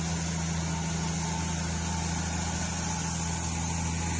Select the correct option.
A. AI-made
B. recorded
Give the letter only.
B